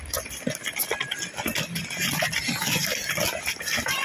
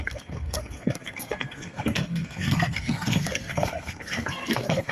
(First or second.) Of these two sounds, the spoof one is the second